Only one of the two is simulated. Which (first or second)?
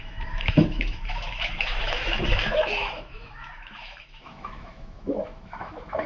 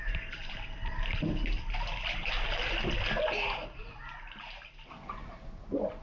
first